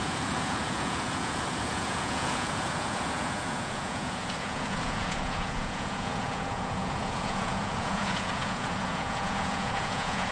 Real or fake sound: fake